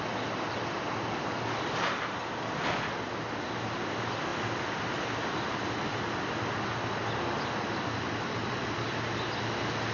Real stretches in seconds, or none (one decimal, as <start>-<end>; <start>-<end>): 0.0-9.9